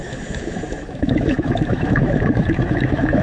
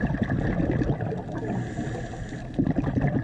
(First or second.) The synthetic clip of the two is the first